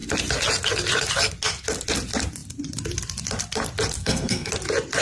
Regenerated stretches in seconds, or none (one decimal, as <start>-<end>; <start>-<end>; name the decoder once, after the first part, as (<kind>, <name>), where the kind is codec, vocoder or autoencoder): 4.0-4.5 (codec, SNAC)